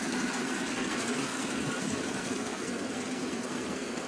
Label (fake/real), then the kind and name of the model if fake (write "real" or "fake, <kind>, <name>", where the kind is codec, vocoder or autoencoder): fake, codec, SNAC